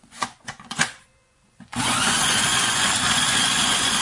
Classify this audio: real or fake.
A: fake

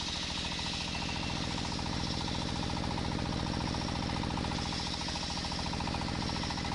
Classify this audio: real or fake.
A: real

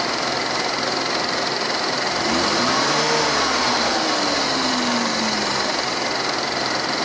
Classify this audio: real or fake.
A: real